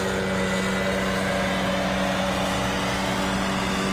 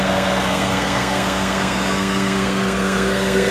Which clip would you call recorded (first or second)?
first